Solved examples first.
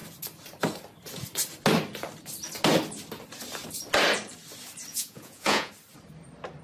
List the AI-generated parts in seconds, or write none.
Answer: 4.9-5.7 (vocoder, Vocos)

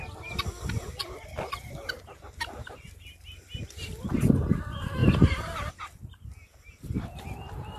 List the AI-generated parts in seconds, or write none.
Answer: none

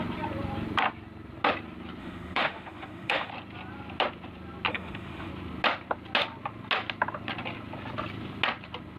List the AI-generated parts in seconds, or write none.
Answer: 2.0-3.3 (autoencoder, DAC-VAE); 4.7-5.3

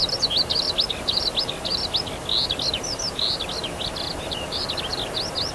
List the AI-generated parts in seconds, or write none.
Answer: none